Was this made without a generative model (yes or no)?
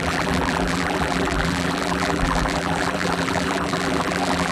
no